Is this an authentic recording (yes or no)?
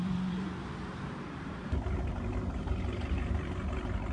no